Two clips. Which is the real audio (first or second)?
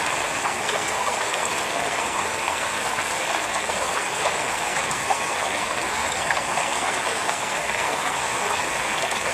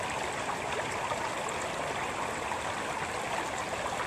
second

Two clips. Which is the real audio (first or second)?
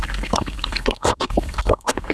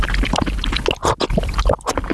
second